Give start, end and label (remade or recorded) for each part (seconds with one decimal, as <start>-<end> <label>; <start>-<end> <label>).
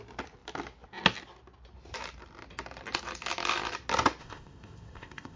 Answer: 0.0-4.2 recorded; 4.2-5.4 remade